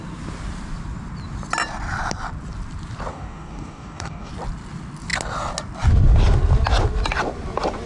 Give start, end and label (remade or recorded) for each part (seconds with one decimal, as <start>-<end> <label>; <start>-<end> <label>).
0.0-3.1 recorded; 3.1-4.3 remade; 4.3-7.9 recorded